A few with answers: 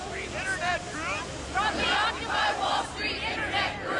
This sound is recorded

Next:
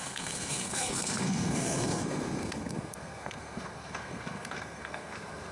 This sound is remade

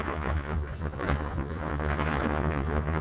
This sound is remade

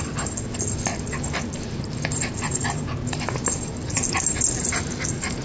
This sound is recorded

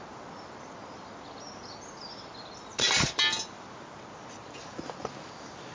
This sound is recorded